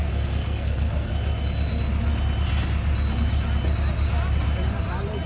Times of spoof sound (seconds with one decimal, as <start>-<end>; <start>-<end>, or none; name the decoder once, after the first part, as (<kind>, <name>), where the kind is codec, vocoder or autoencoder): 0.0-1.1 (codec, SNAC)